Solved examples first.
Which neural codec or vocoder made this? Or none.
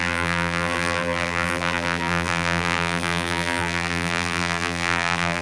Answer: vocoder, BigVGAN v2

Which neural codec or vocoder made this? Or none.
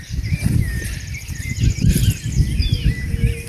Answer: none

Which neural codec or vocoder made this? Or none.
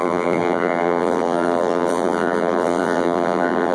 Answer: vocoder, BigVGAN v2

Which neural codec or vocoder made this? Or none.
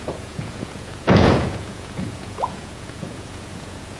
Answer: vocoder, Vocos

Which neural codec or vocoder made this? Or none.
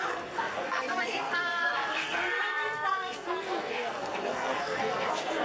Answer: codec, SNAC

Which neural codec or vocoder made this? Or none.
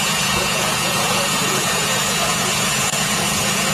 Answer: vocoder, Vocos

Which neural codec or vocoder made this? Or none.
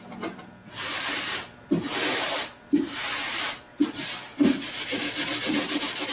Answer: vocoder, BigVGAN v2